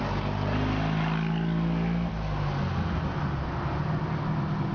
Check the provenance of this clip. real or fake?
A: real